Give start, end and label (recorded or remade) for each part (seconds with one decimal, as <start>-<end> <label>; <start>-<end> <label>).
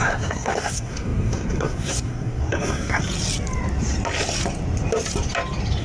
0.0-3.0 remade; 3.0-5.8 recorded